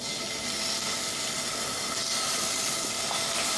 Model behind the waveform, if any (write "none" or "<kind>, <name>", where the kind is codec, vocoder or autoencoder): none